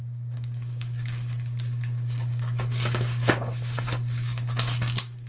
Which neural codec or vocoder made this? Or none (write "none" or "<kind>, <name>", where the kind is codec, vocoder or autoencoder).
codec, DAC